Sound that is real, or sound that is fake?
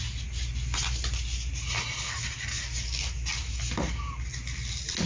real